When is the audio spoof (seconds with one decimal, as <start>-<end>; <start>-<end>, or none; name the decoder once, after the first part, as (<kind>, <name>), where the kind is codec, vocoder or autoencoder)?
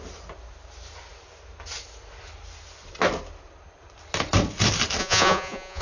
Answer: 5.0-5.8 (vocoder, Vocos)